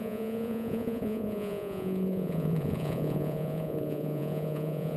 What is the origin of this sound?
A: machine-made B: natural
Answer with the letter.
A